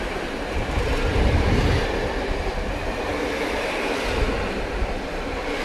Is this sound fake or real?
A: real